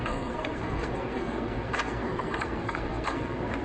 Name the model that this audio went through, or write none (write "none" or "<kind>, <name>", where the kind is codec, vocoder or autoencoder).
codec, SNAC